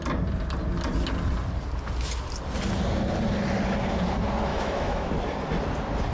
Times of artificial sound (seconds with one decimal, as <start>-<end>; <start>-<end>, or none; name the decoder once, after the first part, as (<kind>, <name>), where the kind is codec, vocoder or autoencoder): 4.5-5.1 (autoencoder, DAC-VAE)